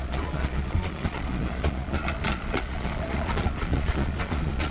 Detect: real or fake fake